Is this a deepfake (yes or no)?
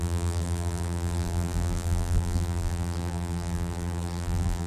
yes